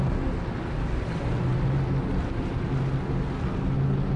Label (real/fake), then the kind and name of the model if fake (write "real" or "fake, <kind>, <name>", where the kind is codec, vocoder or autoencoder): real